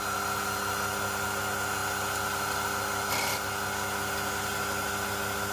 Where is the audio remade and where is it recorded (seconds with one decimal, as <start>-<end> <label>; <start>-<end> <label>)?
0.0-5.5 recorded